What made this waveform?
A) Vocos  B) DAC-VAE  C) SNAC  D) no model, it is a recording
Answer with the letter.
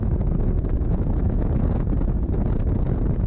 A